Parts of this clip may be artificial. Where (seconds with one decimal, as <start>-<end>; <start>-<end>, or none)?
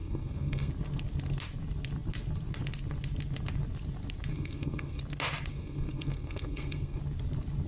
0.0-0.7; 4.3-5.0; 5.5-7.0